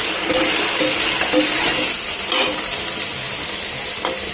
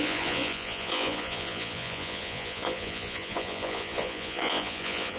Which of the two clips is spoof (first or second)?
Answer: second